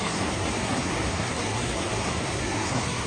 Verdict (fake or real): fake